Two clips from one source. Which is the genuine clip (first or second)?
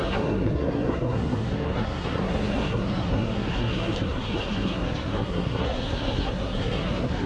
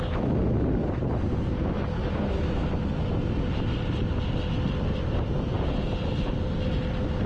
second